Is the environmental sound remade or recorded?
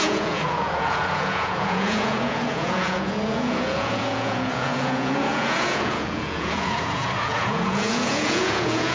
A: remade